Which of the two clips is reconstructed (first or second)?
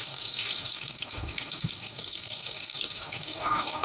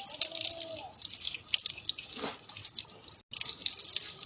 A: first